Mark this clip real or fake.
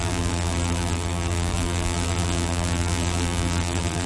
fake